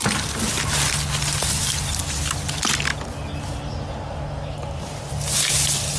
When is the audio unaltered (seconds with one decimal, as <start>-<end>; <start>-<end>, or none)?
0.0-6.0